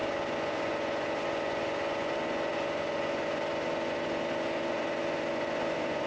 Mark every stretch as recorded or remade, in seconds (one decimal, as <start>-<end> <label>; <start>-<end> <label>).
0.0-6.1 remade